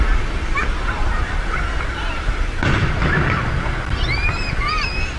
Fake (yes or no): no